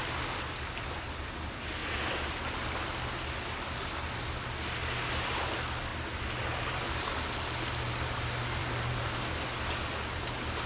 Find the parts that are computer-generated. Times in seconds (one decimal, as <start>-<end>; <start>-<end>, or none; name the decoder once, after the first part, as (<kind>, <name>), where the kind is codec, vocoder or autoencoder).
1.8-2.4 (vocoder, BigVGAN v2); 8.6-9.2